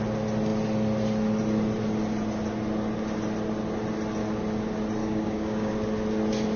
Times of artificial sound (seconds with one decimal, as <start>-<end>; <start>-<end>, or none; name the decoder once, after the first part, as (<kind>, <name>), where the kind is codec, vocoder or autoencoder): 5.0-5.7 (codec, DAC)